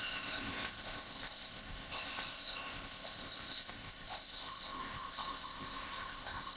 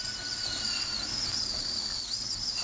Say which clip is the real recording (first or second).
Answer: second